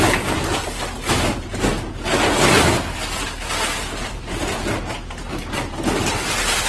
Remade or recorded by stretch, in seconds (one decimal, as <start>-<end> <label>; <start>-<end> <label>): 0.0-6.7 recorded